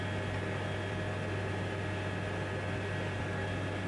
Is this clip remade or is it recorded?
recorded